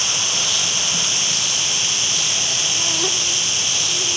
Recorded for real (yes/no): yes